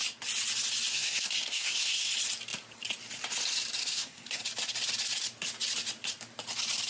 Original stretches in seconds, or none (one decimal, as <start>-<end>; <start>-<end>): 0.0-0.9; 2.1-3.8; 4.4-6.9